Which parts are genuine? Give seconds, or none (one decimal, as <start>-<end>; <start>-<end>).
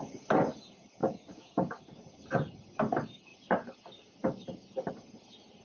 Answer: 0.0-1.0; 1.8-5.6